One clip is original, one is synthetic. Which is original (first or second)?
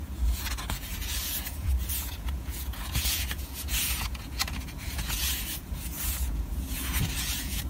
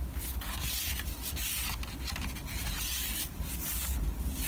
second